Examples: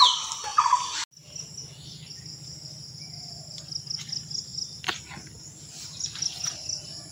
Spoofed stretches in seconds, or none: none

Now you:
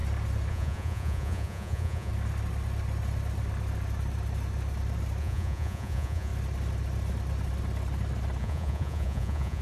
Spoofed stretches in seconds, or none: 0.5-2.1 (vocoder, Vocos); 5.2-6.3; 8.4-9.6

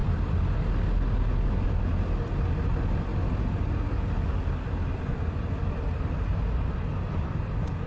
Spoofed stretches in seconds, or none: none